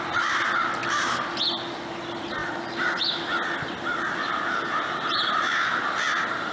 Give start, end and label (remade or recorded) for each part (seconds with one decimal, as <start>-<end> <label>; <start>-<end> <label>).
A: 0.0-6.5 recorded